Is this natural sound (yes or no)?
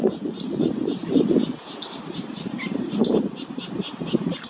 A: yes